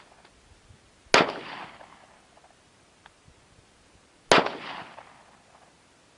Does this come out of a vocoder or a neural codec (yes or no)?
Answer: no